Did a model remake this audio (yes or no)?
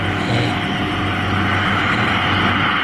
no